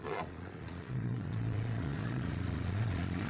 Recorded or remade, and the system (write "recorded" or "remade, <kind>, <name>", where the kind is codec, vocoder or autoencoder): remade, vocoder, Vocos